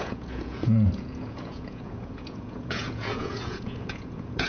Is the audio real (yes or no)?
no